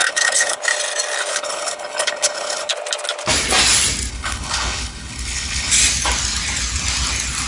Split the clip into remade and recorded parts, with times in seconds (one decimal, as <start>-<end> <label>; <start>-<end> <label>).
0.0-0.6 remade; 0.6-1.3 recorded; 1.3-2.7 remade; 2.7-4.1 recorded; 4.1-5.7 remade; 5.7-7.5 recorded